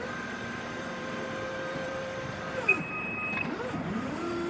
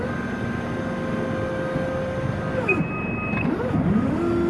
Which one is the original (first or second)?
second